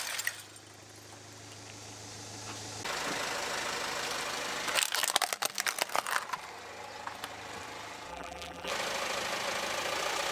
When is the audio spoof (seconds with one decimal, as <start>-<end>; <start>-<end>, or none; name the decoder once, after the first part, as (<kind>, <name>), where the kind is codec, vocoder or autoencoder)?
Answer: 8.1-8.7 (vocoder, BigVGAN v2)